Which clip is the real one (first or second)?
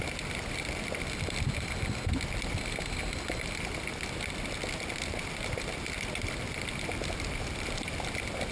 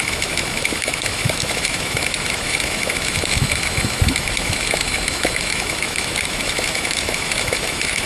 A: first